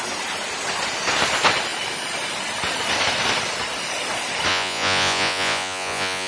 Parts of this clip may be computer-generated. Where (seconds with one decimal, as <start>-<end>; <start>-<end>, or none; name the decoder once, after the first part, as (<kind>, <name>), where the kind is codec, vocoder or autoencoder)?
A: 4.5-6.3 (vocoder, Vocos)

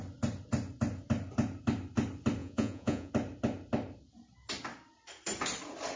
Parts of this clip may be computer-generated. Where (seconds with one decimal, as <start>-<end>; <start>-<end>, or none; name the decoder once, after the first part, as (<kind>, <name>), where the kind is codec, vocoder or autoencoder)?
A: 2.4-3.1 (vocoder, Vocos)

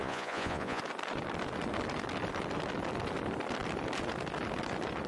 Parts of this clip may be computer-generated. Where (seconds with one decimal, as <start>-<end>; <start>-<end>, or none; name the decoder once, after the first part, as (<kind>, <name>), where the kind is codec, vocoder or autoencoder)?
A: 0.0-0.8 (vocoder, Vocos)

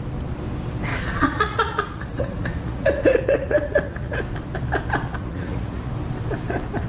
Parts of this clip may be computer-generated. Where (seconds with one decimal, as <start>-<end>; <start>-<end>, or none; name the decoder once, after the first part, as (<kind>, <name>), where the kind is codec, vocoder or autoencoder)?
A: 0.9-4.2 (vocoder, Vocos); 5.2-5.9